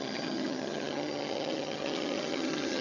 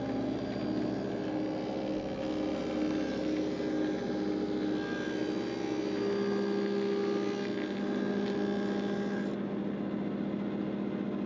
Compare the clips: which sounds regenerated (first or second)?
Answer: first